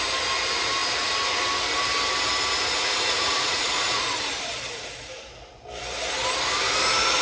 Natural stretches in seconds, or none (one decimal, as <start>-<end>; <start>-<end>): 0.0-2.8; 4.0-7.2